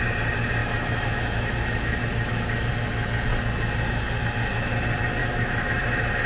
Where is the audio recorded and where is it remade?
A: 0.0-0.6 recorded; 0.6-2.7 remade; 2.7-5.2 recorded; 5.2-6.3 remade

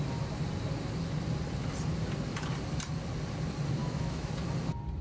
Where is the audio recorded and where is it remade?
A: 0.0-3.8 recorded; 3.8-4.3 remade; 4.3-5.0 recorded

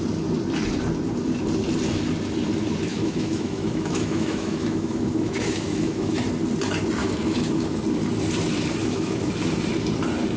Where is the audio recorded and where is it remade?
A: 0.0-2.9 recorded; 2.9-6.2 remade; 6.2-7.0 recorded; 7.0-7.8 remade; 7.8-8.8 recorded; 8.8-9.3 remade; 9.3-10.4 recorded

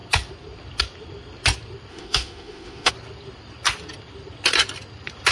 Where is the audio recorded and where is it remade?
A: 0.0-1.9 recorded; 1.9-2.9 remade; 2.9-5.3 recorded

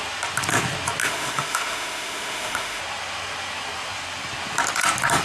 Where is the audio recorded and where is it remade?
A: 0.0-1.0 recorded; 1.0-2.8 remade; 2.8-5.2 recorded

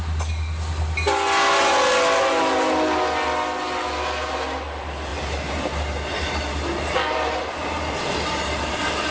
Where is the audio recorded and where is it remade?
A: 0.0-9.1 recorded

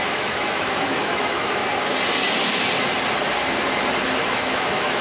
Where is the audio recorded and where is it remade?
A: 0.0-1.6 remade; 1.6-4.2 recorded; 4.2-5.0 remade